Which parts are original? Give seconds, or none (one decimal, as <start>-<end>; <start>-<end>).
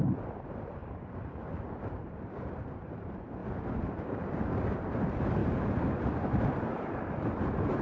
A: 3.4-4.0